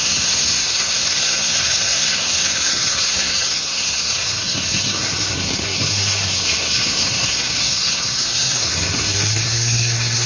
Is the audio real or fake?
fake